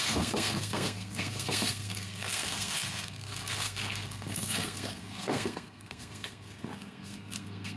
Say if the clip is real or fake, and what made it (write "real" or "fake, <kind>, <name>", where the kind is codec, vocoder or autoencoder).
fake, codec, SNAC